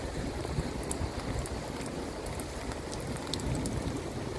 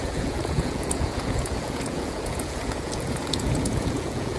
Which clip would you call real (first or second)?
first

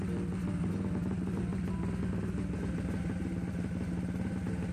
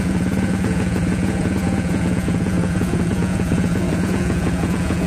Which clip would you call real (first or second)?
first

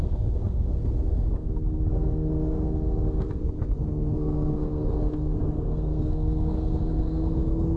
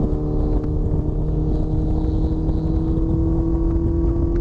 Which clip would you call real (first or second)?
second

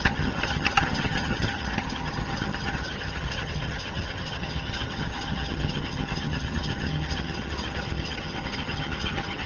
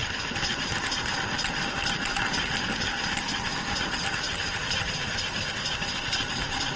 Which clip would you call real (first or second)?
second